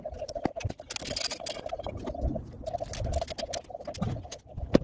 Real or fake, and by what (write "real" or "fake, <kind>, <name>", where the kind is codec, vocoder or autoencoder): real